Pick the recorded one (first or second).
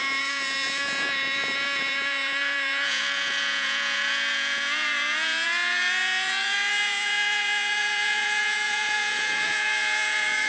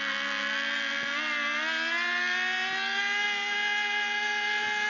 second